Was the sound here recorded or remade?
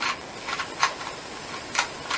recorded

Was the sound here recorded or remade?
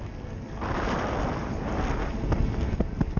recorded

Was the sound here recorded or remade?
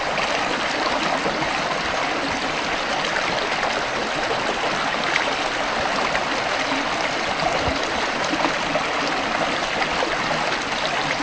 recorded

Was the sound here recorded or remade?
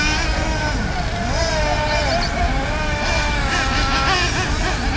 recorded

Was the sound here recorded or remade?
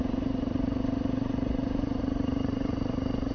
remade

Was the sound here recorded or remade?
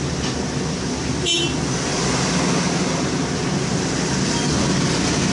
recorded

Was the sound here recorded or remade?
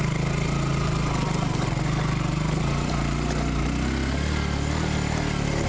recorded